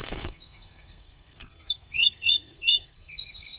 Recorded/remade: remade